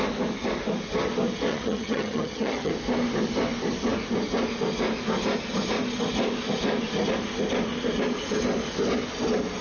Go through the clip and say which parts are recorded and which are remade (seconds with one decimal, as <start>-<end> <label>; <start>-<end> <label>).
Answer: 0.0-1.5 recorded; 1.5-2.7 remade; 2.7-9.6 recorded